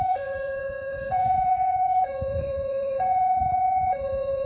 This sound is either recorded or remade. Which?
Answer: remade